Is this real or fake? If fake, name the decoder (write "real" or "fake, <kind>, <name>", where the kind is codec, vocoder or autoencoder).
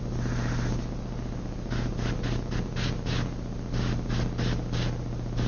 real